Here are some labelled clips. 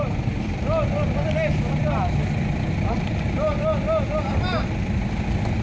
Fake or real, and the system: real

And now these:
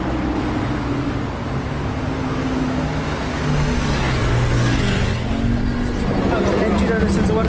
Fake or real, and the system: real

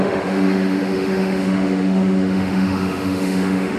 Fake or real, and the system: fake, autoencoder, DAC-VAE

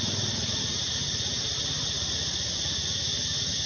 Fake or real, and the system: real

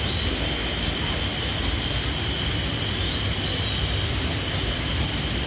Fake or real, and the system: real